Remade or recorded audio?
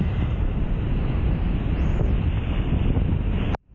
recorded